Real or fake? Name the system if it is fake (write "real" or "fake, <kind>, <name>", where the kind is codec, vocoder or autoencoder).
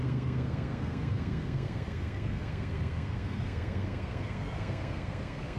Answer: fake, codec, SNAC